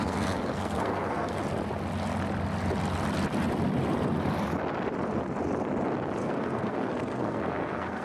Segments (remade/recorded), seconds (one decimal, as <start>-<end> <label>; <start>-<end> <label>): 0.0-1.4 remade; 1.4-6.2 recorded; 6.2-8.0 remade